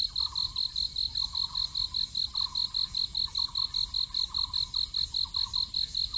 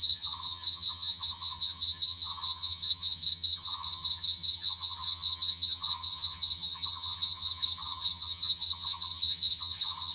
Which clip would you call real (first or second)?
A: first